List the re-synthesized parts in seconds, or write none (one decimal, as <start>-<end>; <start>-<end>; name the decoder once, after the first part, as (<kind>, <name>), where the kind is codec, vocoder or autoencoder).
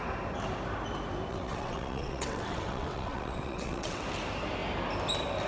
1.3-4.0 (vocoder, WaveNeXt)